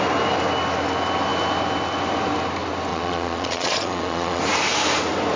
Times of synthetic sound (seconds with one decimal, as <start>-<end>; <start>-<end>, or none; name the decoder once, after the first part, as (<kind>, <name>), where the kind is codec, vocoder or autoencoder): 2.9-4.4 (vocoder, Vocos)